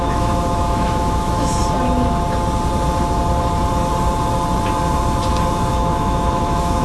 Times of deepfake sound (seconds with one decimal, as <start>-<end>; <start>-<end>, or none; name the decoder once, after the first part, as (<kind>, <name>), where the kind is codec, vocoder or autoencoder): 0.0-1.6 (autoencoder, DAC-VAE); 5.7-6.8